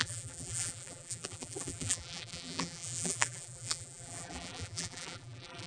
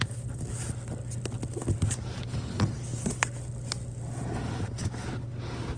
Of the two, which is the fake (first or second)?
first